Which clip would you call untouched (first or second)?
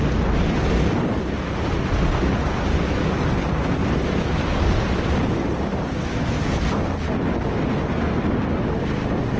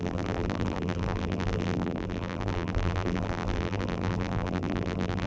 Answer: first